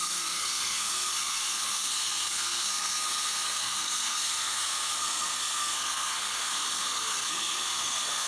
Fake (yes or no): yes